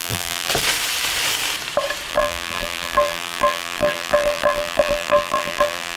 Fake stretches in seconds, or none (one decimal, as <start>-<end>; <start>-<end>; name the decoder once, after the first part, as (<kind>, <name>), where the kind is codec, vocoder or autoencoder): 0.0-0.5 (vocoder, BigVGAN v2); 2.1-6.0